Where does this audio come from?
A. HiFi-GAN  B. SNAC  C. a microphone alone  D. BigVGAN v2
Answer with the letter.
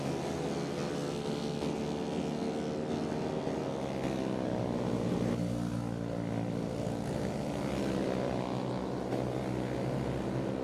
C